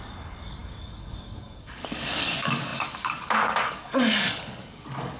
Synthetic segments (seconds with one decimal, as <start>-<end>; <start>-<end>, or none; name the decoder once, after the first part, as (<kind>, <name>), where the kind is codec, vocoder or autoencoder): 0.0-5.2 (codec, DAC)